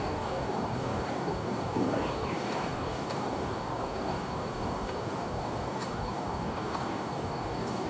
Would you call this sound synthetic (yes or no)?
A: yes